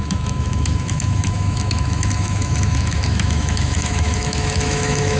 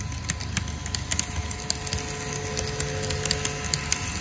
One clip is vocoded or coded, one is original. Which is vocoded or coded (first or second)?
first